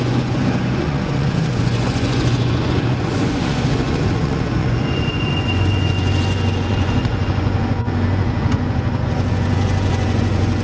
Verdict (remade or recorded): remade